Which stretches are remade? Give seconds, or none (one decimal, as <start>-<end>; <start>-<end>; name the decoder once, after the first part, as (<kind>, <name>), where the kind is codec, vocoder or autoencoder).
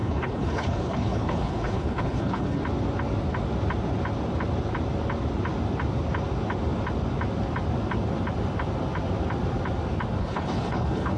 0.0-2.6 (codec, HILCodec); 10.2-11.2